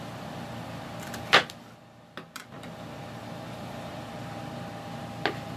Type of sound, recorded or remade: recorded